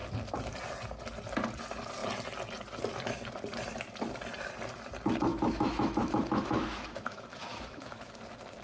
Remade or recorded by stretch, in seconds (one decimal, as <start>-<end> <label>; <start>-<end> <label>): 0.0-5.3 recorded; 5.3-8.2 remade; 8.2-8.6 recorded